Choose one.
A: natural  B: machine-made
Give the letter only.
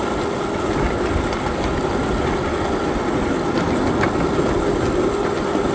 A